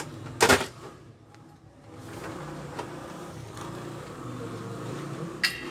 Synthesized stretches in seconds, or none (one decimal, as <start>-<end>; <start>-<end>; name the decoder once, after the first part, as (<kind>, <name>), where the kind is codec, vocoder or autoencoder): 0.5-1.1 (vocoder, BigVGAN v2)